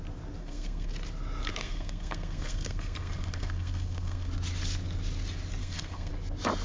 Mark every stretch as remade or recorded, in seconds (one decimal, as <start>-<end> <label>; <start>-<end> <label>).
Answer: 0.0-0.4 recorded; 0.4-0.9 remade; 0.9-1.5 recorded; 1.5-4.3 remade; 4.3-5.6 recorded; 5.6-6.1 remade; 6.1-6.6 recorded